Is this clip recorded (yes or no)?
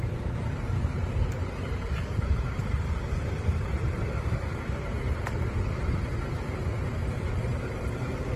no